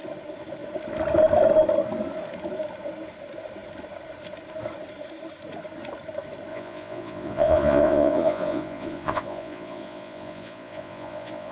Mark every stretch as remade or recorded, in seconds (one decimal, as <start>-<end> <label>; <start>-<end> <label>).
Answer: 0.0-6.5 recorded; 6.5-11.5 remade